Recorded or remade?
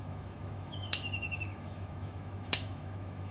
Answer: remade